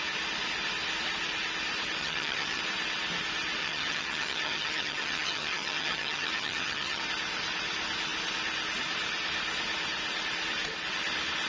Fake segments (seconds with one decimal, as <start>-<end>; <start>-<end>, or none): 2.0-2.6; 3.6-7.0

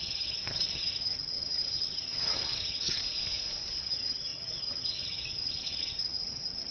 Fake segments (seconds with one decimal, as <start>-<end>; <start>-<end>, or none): 0.0-3.0; 3.8-6.7

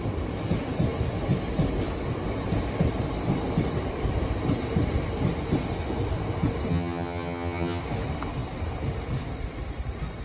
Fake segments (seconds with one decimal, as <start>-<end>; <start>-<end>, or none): 6.7-7.8